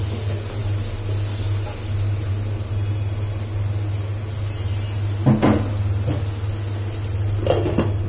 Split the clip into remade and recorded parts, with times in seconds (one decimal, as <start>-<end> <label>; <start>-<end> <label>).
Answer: 0.0-8.1 recorded